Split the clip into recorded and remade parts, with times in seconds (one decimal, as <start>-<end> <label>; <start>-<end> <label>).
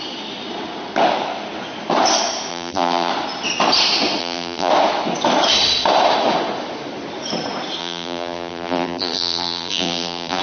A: 0.0-2.5 recorded; 2.5-3.1 remade; 3.1-4.2 recorded; 4.2-4.7 remade; 4.7-7.8 recorded; 7.8-10.4 remade